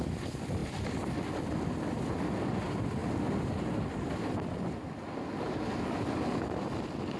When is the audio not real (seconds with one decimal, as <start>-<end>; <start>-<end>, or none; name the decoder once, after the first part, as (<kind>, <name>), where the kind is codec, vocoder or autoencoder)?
none